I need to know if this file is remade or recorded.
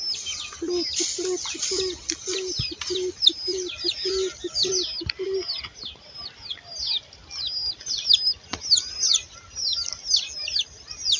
recorded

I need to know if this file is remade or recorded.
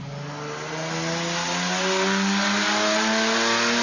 recorded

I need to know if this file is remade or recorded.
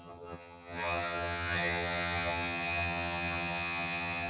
remade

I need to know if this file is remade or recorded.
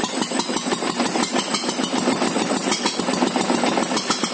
recorded